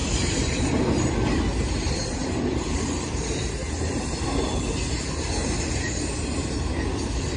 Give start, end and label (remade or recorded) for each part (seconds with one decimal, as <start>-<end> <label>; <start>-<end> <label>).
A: 0.0-0.6 remade; 0.6-1.5 recorded; 1.5-4.6 remade; 4.6-7.4 recorded